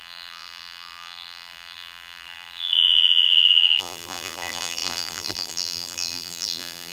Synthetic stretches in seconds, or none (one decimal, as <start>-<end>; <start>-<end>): 0.0-6.9